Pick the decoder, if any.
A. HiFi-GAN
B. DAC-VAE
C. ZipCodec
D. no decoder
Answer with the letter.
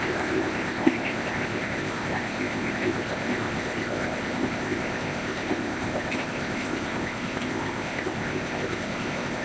C